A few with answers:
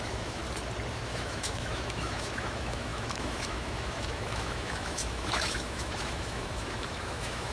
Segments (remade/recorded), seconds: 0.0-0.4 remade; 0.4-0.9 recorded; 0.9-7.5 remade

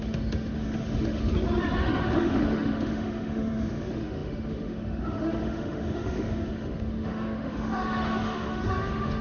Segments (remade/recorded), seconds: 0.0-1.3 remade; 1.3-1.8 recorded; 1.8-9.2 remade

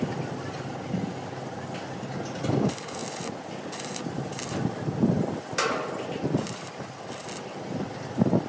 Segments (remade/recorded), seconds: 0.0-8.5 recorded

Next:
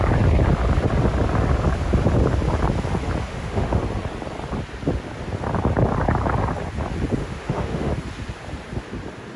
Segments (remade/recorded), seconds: 0.0-3.3 recorded; 3.3-3.8 remade; 3.8-7.2 recorded; 7.2-7.9 remade; 7.9-9.4 recorded